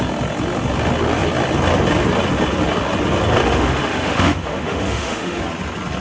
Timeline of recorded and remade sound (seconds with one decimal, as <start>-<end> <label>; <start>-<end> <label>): 0.0-3.4 recorded; 3.4-5.4 remade; 5.4-6.0 recorded